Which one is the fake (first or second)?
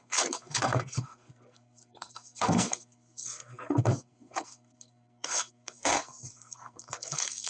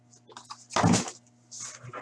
first